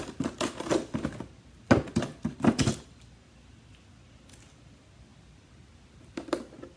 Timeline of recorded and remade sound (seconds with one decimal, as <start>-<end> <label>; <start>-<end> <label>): 0.0-6.8 recorded